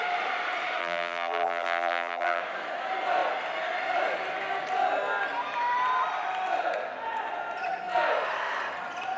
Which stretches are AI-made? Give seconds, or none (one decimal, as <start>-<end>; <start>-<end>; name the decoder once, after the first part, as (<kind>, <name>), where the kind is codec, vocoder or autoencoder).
0.8-2.4 (vocoder, BigVGAN v2)